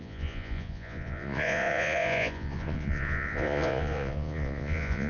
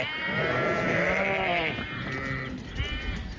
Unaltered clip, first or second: second